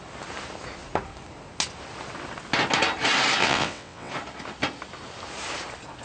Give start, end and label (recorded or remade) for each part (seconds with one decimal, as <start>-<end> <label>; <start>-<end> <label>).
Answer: 0.0-3.4 recorded; 3.4-4.1 remade; 4.1-6.0 recorded